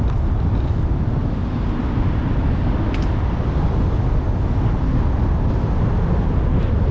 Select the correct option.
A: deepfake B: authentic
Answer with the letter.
B